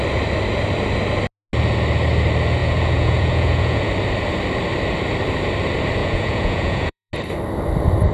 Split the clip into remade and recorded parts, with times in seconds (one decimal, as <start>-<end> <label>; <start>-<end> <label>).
0.0-2.6 recorded; 2.6-3.9 remade; 3.9-6.0 recorded; 6.0-7.1 remade; 7.1-8.1 recorded